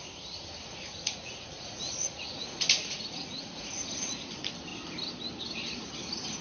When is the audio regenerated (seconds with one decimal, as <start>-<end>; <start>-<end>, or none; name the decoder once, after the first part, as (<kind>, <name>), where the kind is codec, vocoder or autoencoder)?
0.6-4.3 (vocoder, Vocos)